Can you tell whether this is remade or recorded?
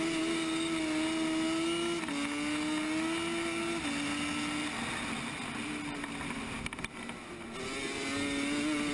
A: recorded